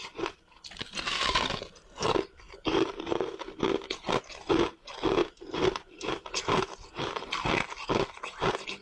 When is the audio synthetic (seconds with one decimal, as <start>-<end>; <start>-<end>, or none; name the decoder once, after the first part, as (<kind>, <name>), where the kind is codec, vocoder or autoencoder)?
5.2-5.9 (vocoder, BigVGAN v2)